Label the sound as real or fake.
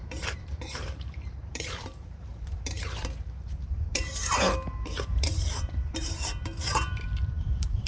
fake